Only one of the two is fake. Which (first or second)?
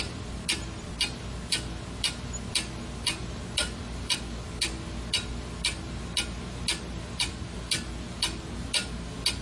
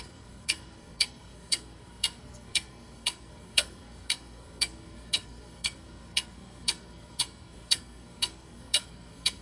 second